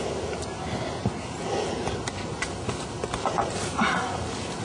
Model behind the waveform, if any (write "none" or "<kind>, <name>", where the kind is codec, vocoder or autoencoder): none